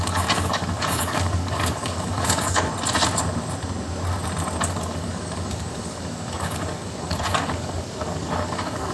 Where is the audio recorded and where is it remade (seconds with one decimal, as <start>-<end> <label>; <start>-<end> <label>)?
0.0-2.7 remade; 2.7-4.6 recorded; 4.6-8.9 remade